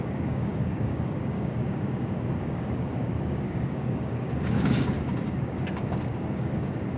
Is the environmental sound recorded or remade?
remade